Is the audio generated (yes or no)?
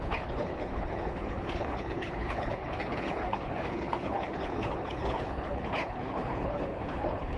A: yes